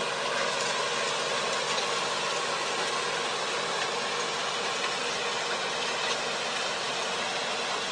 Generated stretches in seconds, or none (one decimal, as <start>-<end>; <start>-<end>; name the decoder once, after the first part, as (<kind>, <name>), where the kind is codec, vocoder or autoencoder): none